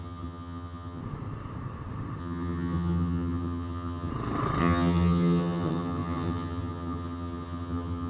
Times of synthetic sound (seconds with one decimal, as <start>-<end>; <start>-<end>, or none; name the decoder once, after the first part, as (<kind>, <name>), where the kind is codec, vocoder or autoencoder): 0.0-1.0 (vocoder, HiFi-GAN); 2.2-4.1; 4.6-8.1